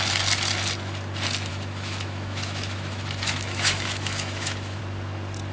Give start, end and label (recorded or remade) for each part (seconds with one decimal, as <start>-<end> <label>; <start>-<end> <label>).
0.0-1.5 recorded; 1.5-4.8 remade; 4.8-5.5 recorded